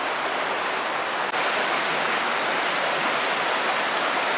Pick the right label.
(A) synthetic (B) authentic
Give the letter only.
B